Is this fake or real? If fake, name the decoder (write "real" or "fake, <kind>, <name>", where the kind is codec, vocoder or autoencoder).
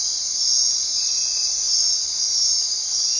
real